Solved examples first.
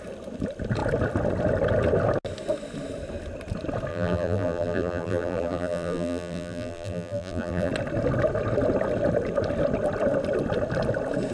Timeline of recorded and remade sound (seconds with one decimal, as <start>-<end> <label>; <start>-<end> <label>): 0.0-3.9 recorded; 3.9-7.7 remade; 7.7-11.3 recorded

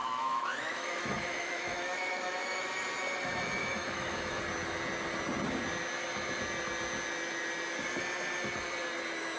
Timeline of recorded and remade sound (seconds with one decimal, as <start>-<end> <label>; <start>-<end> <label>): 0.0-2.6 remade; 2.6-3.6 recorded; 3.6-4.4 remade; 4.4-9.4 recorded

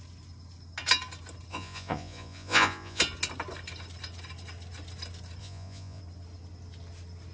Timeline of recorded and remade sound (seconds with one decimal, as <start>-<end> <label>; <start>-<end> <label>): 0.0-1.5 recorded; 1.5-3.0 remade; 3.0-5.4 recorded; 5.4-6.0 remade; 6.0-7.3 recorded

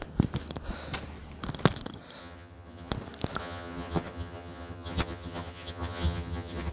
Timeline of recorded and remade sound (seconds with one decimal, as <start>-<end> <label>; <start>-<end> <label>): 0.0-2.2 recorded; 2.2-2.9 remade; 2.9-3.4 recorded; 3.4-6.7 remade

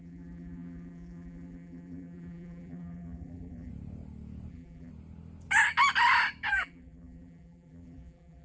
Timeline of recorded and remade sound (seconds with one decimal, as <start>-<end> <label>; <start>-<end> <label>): 0.0-3.7 remade; 3.7-4.5 recorded; 4.5-4.9 remade; 4.9-6.5 recorded; 6.5-8.4 remade

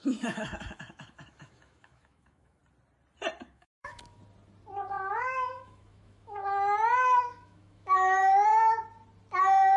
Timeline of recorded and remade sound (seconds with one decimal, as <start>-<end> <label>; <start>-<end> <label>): 0.0-2.6 remade; 2.6-3.4 recorded; 3.4-4.2 remade; 4.2-5.2 recorded; 5.2-8.5 remade; 8.5-9.8 recorded

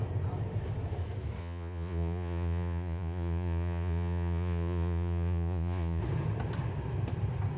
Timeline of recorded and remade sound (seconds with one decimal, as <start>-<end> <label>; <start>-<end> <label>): 0.0-1.4 recorded; 1.4-6.0 remade; 6.0-7.6 recorded